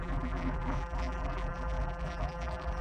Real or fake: fake